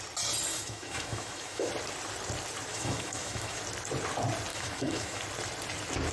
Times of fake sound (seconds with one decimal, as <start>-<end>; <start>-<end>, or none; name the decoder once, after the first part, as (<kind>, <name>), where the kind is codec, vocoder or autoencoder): 0.5-1.7 (autoencoder, DAC-VAE); 2.7-3.6; 4.5-5.2

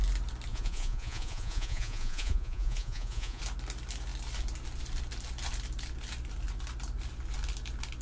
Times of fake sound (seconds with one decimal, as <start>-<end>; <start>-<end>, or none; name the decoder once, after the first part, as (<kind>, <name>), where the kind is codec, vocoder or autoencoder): 0.5-3.4 (vocoder, Vocos)